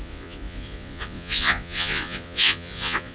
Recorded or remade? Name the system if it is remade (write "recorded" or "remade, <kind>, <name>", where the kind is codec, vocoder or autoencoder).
remade, vocoder, Vocos